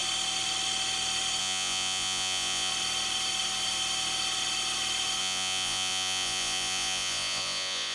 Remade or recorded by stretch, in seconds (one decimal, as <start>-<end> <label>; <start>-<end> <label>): 0.0-1.4 recorded; 1.4-2.7 remade; 2.7-5.2 recorded; 5.2-7.9 remade